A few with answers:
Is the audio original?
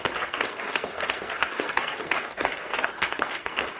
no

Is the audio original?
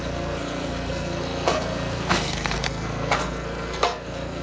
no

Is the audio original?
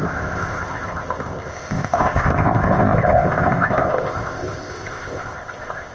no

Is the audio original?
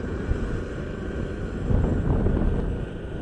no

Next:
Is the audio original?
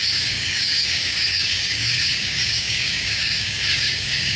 no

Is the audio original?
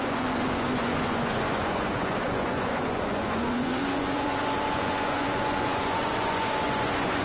no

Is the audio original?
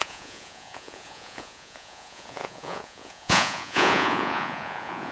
no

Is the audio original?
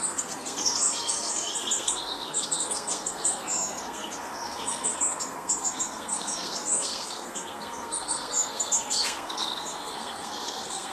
no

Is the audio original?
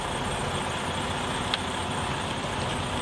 yes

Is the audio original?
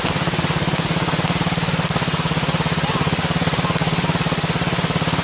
yes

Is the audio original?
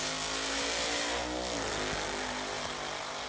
yes